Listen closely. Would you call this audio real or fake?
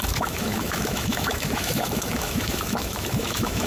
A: fake